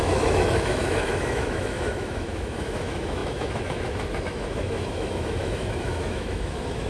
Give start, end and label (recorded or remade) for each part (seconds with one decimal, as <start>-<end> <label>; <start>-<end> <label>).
0.0-6.9 remade